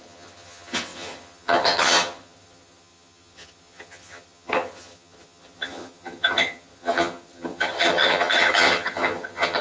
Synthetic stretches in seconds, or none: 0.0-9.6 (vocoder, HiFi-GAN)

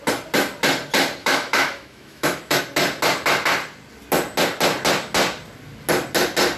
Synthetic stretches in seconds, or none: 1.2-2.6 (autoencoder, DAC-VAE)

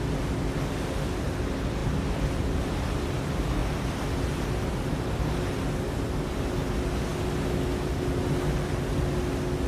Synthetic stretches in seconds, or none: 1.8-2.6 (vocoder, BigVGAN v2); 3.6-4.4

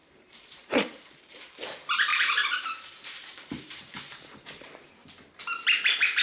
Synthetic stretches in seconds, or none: 0.0-1.5 (vocoder, BigVGAN v2); 2.1-4.9

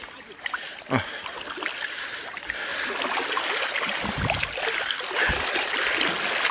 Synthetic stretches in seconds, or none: none

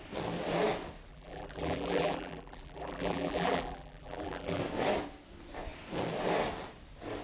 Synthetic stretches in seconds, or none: 1.1-4.6 (vocoder, BigVGAN v2)

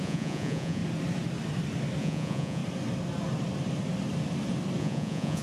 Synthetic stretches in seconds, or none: 0.0-0.8 (vocoder, Vocos); 2.0-2.6; 4.8-5.4